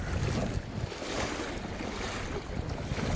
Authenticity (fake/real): real